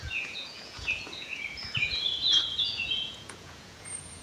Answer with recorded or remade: remade